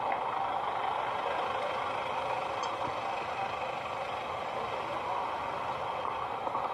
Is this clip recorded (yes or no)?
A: yes